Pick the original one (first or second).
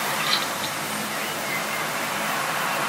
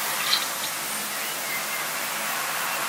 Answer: second